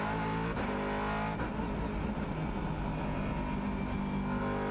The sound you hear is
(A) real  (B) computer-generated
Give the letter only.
A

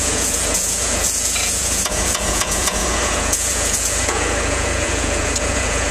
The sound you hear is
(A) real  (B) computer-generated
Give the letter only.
B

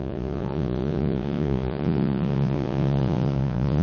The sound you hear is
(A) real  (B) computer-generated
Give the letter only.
B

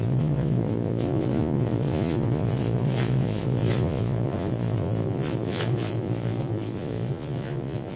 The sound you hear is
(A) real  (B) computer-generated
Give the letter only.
B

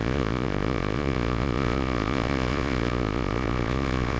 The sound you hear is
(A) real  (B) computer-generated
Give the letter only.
B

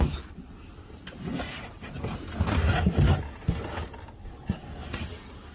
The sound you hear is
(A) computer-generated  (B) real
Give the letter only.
B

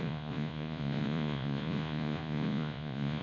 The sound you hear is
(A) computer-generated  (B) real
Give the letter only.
A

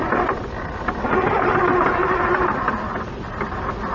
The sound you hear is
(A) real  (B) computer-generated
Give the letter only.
A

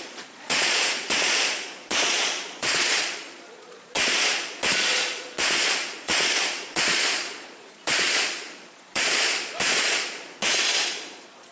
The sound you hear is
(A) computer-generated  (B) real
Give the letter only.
A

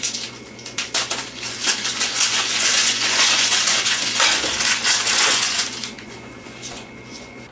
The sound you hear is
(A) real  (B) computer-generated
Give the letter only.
B